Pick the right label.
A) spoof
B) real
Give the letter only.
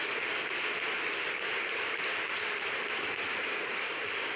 B